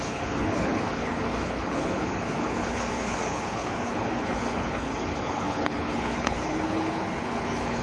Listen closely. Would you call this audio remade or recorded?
remade